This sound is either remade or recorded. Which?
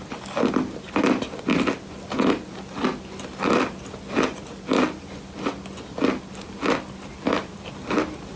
recorded